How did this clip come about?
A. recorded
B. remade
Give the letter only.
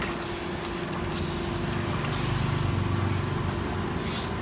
A